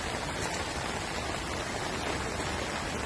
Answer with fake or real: real